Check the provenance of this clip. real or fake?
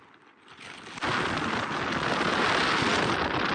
real